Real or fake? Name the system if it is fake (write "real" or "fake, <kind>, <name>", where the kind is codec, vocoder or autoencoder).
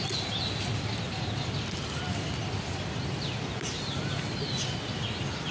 real